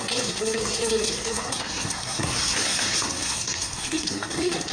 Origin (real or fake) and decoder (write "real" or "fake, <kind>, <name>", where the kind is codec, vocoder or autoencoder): fake, codec, SNAC